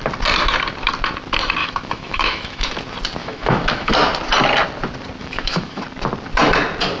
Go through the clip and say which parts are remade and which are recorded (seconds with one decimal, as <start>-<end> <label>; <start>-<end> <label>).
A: 0.0-1.6 recorded; 1.6-2.7 remade; 2.7-3.2 recorded; 3.2-3.9 remade; 3.9-5.2 recorded; 5.2-5.8 remade; 5.8-7.0 recorded